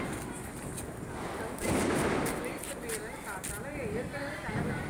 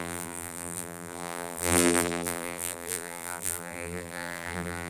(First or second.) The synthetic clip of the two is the second